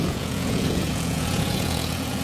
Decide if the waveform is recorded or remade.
remade